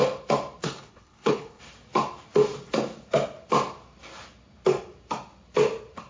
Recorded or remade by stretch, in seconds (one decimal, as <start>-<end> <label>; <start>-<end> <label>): 0.0-0.6 recorded; 0.6-1.6 remade; 1.6-6.1 recorded